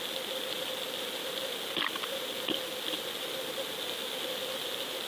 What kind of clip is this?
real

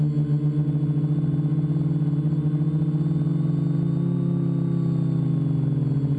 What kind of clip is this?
real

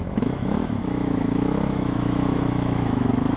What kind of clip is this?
fake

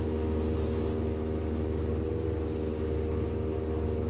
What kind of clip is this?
real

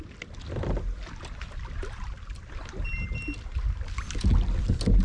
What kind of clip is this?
real